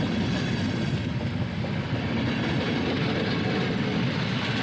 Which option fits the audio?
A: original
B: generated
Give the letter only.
A